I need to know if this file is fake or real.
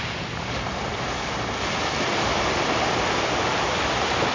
real